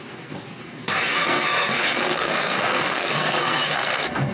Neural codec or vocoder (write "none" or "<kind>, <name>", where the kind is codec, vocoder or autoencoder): codec, SNAC